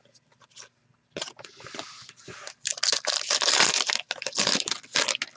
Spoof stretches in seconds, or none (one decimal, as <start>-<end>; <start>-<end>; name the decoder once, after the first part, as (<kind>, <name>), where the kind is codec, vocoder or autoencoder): none